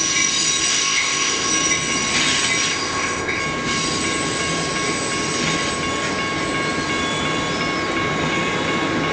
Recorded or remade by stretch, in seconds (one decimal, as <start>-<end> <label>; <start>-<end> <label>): 0.0-0.7 recorded; 0.7-1.5 remade; 1.5-2.7 recorded; 2.7-3.4 remade; 3.4-9.1 recorded